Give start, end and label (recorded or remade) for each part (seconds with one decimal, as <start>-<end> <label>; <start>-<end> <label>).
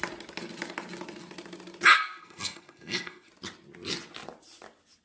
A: 0.0-1.9 recorded; 1.9-3.3 remade; 3.3-5.0 recorded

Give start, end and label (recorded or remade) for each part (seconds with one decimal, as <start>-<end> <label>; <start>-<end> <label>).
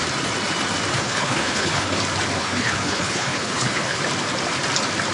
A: 0.0-0.9 recorded; 0.9-2.0 remade; 2.0-2.4 recorded; 2.4-4.0 remade; 4.0-5.1 recorded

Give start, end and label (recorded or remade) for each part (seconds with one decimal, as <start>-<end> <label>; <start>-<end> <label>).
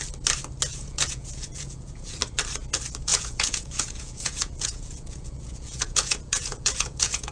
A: 0.0-0.7 recorded; 0.7-2.2 remade; 2.2-3.1 recorded; 3.1-7.3 remade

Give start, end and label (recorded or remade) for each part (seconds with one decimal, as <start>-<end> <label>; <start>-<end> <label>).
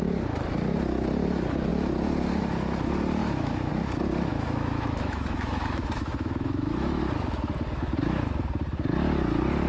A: 0.0-3.2 recorded; 3.2-3.7 remade; 3.7-4.3 recorded; 4.3-7.0 remade; 7.0-9.7 recorded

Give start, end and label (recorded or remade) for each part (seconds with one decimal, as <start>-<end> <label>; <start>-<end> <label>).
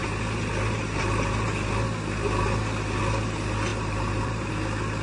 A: 0.0-3.7 recorded; 3.7-4.5 remade; 4.5-5.0 recorded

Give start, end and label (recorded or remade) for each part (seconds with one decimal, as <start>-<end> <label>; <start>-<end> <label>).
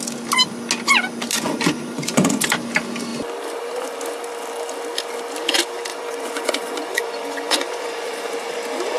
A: 0.0-1.3 recorded; 1.3-2.4 remade; 2.4-5.9 recorded; 5.9-8.3 remade; 8.3-9.0 recorded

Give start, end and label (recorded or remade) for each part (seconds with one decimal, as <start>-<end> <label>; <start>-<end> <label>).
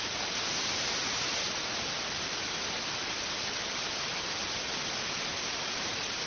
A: 0.0-1.7 remade; 1.7-5.5 recorded; 5.5-6.3 remade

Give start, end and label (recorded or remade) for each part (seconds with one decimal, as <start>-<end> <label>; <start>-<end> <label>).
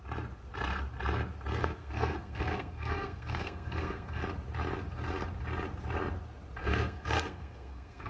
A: 0.0-1.6 recorded; 1.6-4.2 remade; 4.2-6.6 recorded; 6.6-8.1 remade